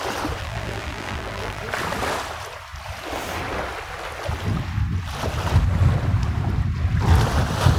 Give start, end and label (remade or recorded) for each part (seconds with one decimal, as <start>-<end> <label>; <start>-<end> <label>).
0.0-0.4 recorded; 0.4-1.6 remade; 1.6-7.8 recorded